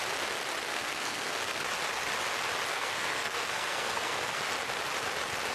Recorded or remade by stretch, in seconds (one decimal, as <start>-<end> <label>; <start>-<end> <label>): 0.0-0.7 recorded; 0.7-1.6 remade; 1.6-2.7 recorded; 2.7-4.4 remade; 4.4-5.5 recorded